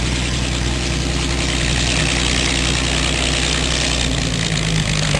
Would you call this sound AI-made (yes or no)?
no